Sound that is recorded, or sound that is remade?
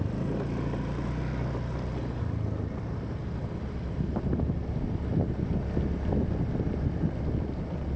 recorded